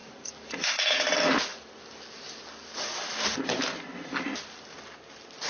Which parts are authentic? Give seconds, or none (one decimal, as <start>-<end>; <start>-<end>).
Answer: 0.8-1.5; 4.8-5.5